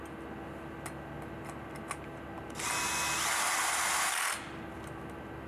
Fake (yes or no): no